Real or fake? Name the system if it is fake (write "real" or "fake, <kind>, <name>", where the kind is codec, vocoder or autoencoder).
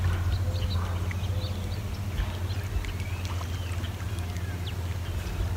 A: real